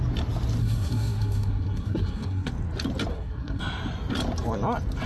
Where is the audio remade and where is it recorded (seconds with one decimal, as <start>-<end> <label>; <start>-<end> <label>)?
0.0-0.6 recorded; 0.6-2.5 remade; 2.5-3.1 recorded; 3.1-3.6 remade; 3.6-5.1 recorded